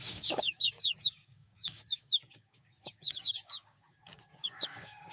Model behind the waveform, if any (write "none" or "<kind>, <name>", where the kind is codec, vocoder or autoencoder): codec, DAC